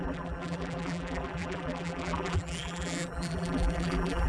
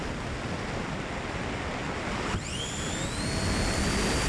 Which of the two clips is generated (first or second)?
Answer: first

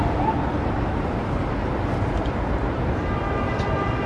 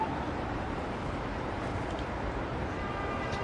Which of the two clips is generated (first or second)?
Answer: second